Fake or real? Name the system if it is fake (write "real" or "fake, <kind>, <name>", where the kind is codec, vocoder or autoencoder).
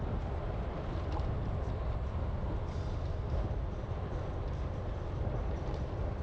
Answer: fake, vocoder, BigVGAN v2